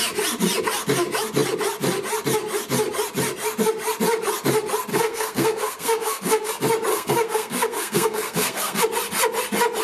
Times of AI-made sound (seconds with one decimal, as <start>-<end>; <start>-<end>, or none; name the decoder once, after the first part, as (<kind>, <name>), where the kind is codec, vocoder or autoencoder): 4.9-6.5 (codec, SNAC); 6.9-8.8